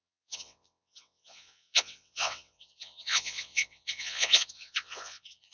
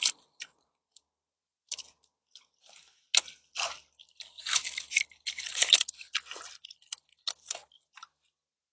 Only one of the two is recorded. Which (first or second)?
second